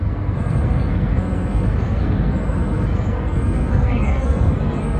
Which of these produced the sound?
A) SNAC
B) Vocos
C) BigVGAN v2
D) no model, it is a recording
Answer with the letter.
A